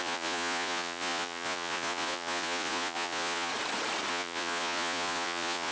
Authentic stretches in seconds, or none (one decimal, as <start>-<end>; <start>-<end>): 3.5-4.1